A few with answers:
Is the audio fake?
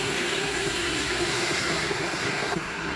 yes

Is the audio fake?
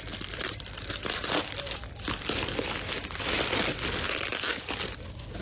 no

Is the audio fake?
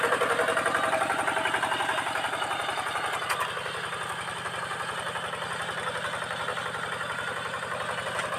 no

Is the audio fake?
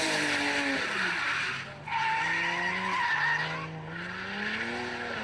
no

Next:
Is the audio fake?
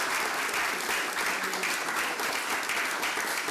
no